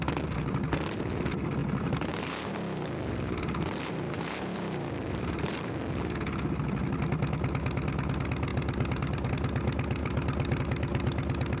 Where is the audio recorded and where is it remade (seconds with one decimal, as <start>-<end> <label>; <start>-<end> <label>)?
0.0-1.6 recorded; 1.6-5.9 remade; 5.9-8.5 recorded; 8.5-9.3 remade; 9.3-10.0 recorded; 10.0-10.6 remade; 10.6-11.6 recorded